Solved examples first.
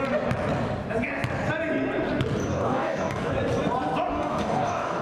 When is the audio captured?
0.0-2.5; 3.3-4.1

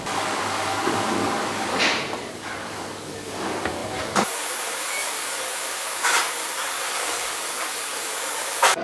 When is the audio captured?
1.7-2.3